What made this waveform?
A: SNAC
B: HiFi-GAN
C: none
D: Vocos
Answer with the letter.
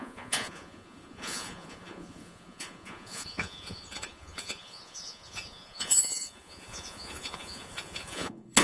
D